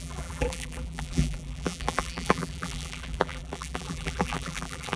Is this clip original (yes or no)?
no